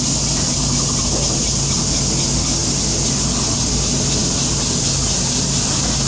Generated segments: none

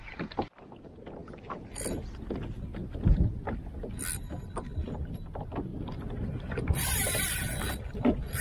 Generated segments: none

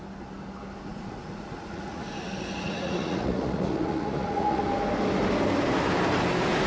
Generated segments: 0.9-4.6 (vocoder, Vocos)

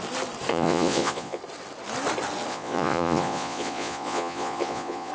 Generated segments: 0.5-1.4 (vocoder, Vocos); 2.5-5.1

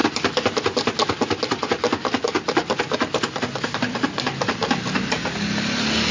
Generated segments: none

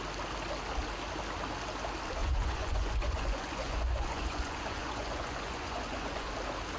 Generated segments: 2.2-6.3 (vocoder, Vocos)

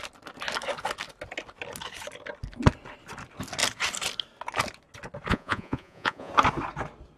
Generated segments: 5.3-6.3 (vocoder, Vocos)